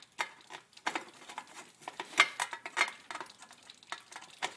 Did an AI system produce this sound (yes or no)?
no